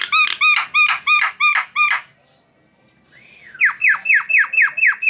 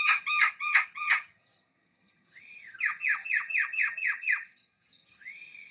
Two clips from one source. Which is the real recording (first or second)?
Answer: first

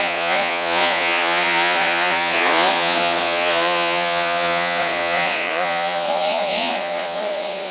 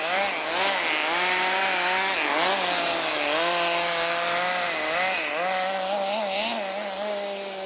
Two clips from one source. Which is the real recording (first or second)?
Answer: second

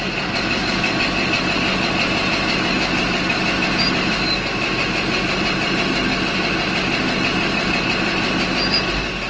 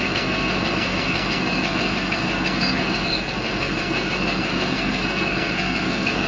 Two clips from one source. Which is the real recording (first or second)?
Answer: first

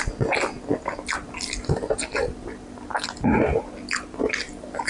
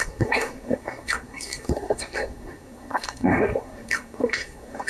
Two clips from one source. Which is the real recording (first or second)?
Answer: first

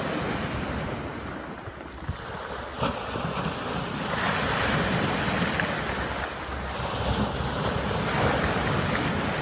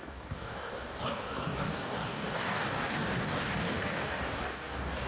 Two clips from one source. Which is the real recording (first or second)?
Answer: first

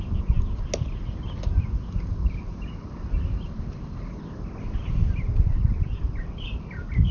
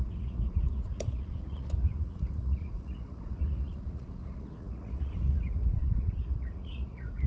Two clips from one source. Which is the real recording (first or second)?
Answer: first